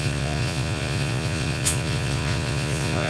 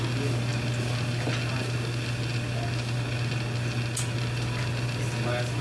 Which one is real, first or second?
second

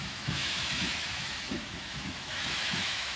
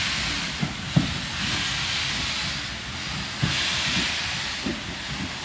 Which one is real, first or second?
second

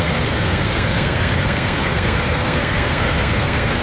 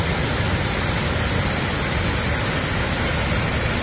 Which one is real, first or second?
second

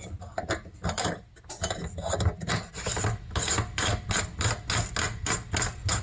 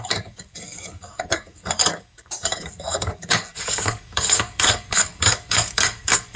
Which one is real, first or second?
first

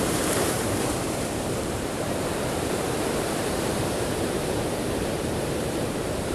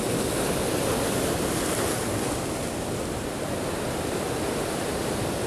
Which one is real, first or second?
second